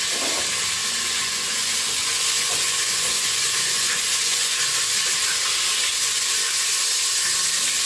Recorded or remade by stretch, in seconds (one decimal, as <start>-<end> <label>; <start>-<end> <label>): 0.0-0.8 recorded; 0.8-4.6 remade; 4.6-5.9 recorded; 5.9-6.5 remade; 6.5-7.9 recorded